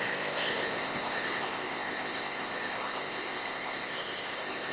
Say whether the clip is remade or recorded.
remade